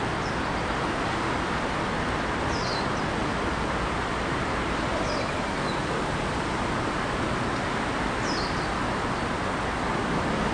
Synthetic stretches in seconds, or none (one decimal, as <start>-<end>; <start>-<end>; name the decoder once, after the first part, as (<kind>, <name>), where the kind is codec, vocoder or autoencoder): none